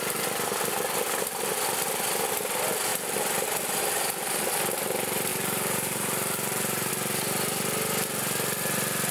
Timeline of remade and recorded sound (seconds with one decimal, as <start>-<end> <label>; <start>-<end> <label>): 0.0-5.3 recorded; 5.3-6.9 remade; 6.9-9.1 recorded